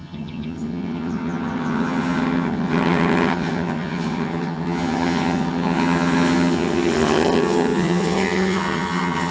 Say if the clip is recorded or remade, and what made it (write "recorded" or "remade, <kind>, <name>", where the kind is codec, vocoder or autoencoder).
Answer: remade, vocoder, HiFi-GAN